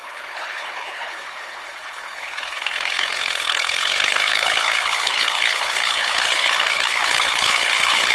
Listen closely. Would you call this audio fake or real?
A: fake